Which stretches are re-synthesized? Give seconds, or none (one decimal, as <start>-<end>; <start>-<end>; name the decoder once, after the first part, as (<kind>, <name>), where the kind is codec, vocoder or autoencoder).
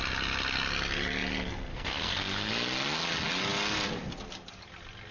1.7-2.5 (codec, SNAC)